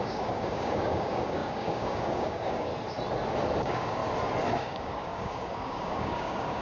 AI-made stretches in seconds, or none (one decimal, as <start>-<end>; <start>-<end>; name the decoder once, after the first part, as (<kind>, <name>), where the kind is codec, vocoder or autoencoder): 0.0-2.7 (codec, DAC); 3.6-4.0; 4.5-6.6